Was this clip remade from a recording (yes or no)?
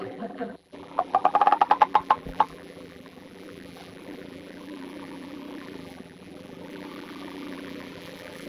yes